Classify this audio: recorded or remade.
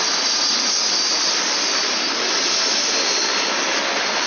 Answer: recorded